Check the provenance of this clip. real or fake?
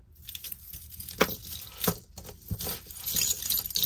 real